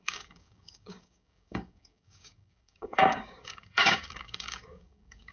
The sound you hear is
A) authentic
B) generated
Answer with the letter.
B